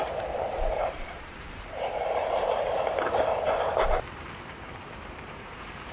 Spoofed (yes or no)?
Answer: yes